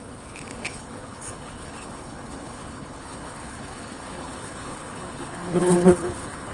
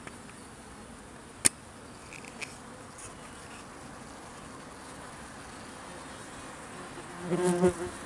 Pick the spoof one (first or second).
first